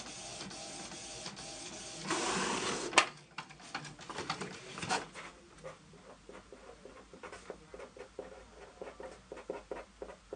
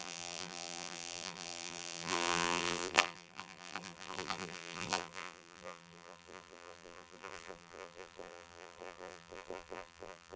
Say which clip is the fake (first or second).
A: second